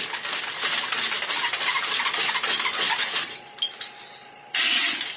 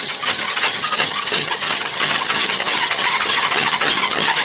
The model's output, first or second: second